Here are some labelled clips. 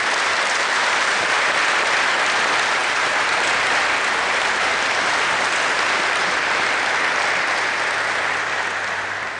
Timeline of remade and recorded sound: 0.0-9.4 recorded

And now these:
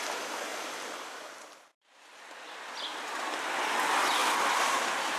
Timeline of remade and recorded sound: 0.0-0.5 recorded; 0.5-3.5 remade; 3.5-4.2 recorded; 4.2-5.2 remade

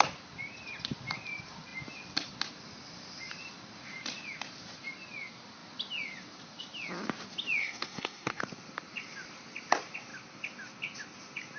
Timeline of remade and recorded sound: 0.0-7.6 recorded; 7.6-8.4 remade; 8.4-11.6 recorded

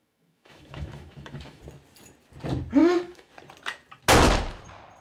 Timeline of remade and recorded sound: 0.0-1.6 remade; 1.6-2.8 recorded; 2.8-3.3 remade; 3.3-5.0 recorded

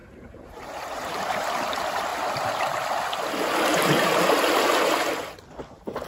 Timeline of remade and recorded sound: 0.0-1.2 remade; 1.2-6.1 recorded

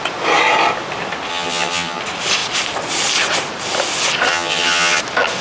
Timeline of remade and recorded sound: 0.0-1.3 recorded; 1.3-2.0 remade; 2.0-4.3 recorded; 4.3-5.0 remade; 5.0-5.4 recorded